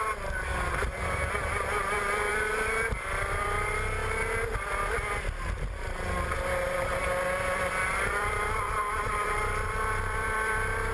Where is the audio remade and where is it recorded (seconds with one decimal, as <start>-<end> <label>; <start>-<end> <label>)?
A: 0.0-4.0 remade; 4.0-7.7 recorded; 7.7-10.9 remade

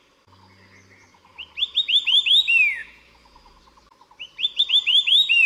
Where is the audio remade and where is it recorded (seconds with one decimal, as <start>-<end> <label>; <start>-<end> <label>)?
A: 0.0-2.8 recorded; 2.8-4.7 remade; 4.7-5.5 recorded